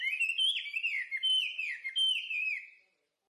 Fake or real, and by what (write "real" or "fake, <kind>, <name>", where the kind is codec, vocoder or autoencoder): real